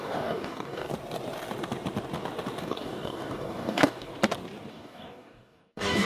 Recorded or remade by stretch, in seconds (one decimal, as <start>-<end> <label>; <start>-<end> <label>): 0.0-0.9 remade; 0.9-2.6 recorded; 2.6-4.1 remade; 4.1-4.7 recorded; 4.7-6.0 remade

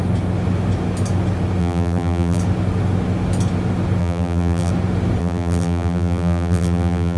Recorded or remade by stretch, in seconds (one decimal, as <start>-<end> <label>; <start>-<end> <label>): 0.0-1.6 recorded; 1.6-2.4 remade; 2.4-4.0 recorded; 4.0-4.7 remade; 4.7-5.2 recorded; 5.2-7.2 remade

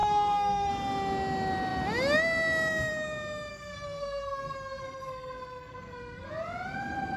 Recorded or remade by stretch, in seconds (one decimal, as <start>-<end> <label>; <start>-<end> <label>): 0.0-0.7 remade; 0.7-3.5 recorded; 3.5-6.3 remade; 6.3-7.2 recorded

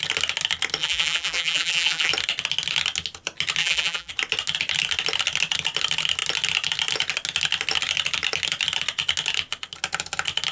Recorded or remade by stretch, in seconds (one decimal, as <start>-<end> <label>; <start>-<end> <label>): 0.0-0.8 recorded; 0.8-2.1 remade; 2.1-3.6 recorded; 3.6-4.1 remade; 4.1-10.5 recorded